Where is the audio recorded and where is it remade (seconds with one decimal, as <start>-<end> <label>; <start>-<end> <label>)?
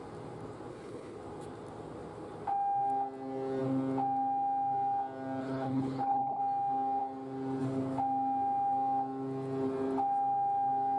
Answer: 0.0-0.7 recorded; 0.7-1.2 remade; 1.2-5.4 recorded; 5.4-6.4 remade; 6.4-11.0 recorded